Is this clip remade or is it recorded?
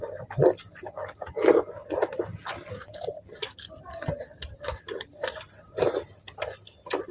recorded